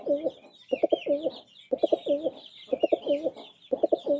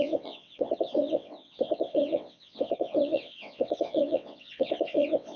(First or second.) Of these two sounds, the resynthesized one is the second